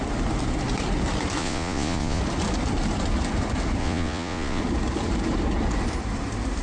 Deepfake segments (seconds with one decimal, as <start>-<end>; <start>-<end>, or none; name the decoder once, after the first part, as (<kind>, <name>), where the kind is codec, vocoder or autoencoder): 1.4-2.2 (vocoder, Vocos); 3.8-4.6